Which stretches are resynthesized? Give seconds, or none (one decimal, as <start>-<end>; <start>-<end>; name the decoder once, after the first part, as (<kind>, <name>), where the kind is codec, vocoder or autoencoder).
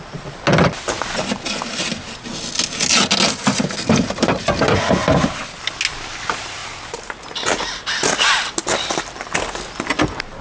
6.6-7.2 (vocoder, BigVGAN v2)